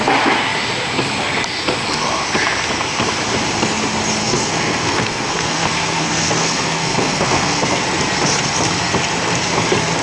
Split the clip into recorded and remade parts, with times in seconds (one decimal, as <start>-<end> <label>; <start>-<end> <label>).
0.0-4.2 recorded; 4.2-7.8 remade; 7.8-10.0 recorded